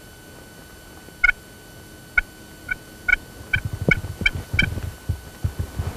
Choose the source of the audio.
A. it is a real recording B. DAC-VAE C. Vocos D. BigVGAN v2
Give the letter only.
A